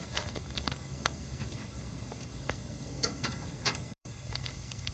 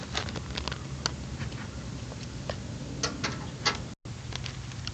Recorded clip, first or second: second